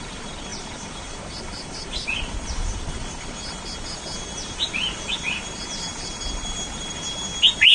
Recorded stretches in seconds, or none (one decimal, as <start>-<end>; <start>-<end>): none